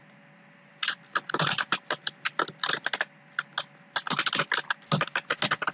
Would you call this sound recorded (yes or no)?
yes